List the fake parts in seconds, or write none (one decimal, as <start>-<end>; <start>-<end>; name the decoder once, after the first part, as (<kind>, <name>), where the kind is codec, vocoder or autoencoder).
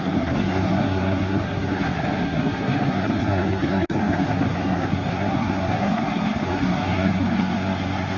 0.0-8.2 (codec, SNAC)